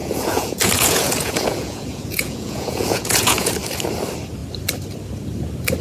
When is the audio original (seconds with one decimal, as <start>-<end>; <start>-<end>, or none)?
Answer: 3.5-5.8